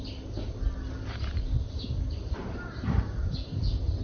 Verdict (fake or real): real